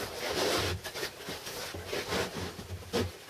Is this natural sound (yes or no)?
no